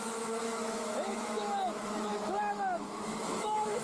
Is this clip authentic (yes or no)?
no